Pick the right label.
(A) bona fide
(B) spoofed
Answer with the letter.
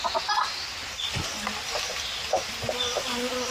A